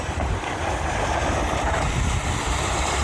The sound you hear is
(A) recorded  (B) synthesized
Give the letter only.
A